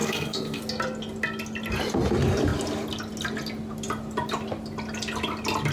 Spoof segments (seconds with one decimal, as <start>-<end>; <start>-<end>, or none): 0.0-0.6